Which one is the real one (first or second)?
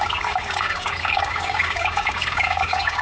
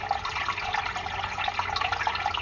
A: second